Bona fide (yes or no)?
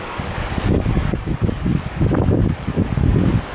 no